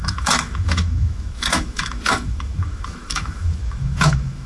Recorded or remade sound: remade